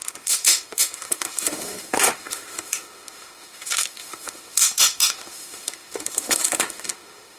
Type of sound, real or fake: fake